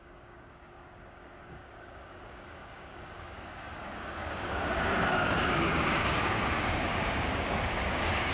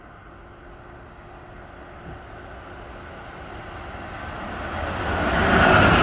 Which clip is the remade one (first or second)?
first